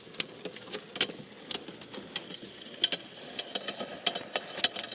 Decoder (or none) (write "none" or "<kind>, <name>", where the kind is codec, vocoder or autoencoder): none